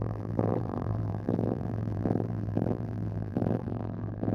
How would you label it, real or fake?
fake